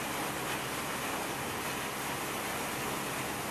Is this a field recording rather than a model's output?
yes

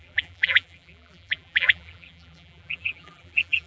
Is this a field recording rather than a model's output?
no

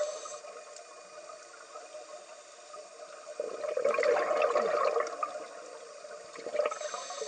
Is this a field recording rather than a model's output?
yes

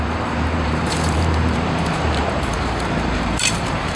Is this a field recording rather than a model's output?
no